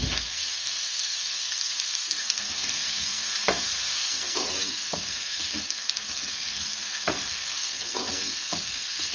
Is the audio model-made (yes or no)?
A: yes